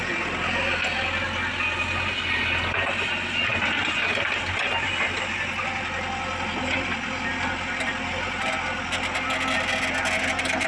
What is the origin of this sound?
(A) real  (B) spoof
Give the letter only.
A